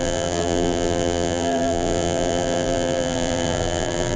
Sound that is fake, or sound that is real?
fake